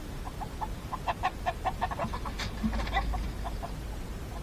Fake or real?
real